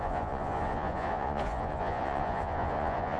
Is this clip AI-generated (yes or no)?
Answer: yes